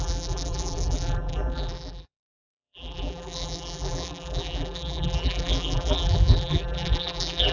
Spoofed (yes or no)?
yes